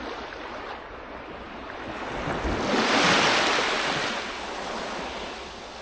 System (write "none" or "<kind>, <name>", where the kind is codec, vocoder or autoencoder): none